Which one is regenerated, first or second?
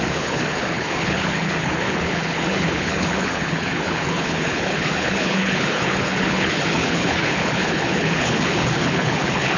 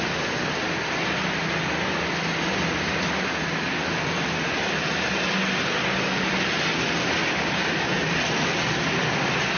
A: first